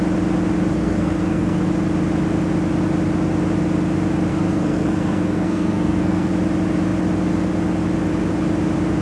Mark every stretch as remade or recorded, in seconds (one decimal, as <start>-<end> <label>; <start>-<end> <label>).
0.0-0.7 recorded; 0.7-1.7 remade; 1.7-4.3 recorded; 4.3-6.3 remade; 6.3-9.0 recorded